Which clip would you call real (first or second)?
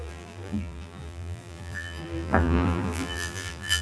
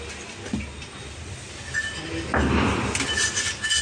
second